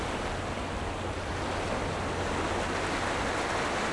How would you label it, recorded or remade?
recorded